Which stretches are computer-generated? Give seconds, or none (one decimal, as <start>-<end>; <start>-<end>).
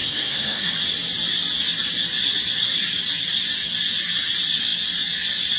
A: 0.0-0.7